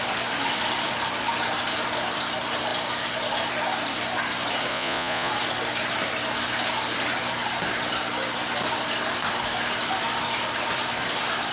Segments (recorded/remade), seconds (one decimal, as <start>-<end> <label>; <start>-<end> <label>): 0.0-4.7 recorded; 4.7-5.3 remade; 5.3-11.5 recorded